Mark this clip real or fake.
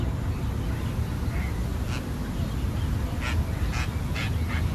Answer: real